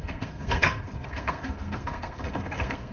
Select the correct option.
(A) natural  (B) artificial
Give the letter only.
B